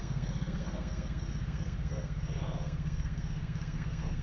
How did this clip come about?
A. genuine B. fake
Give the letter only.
B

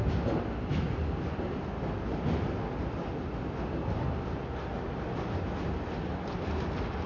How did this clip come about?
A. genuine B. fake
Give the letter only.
A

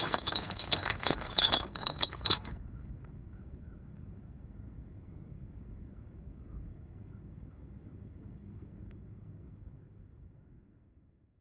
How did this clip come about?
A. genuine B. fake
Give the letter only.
B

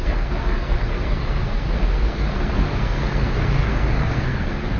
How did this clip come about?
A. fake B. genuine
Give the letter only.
A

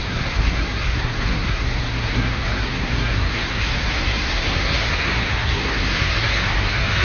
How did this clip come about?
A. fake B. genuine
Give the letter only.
A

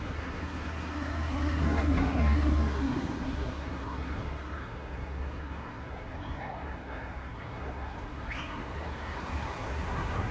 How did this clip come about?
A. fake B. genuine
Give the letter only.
A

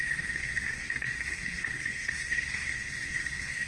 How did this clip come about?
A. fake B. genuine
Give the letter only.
A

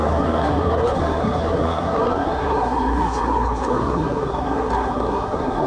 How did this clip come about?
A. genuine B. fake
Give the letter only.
B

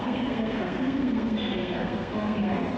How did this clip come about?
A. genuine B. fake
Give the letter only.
B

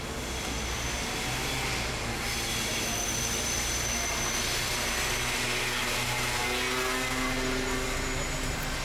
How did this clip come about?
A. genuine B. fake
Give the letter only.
A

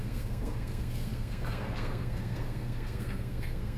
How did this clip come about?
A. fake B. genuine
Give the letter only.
A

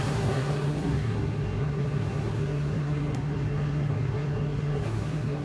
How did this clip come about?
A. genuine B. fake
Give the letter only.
B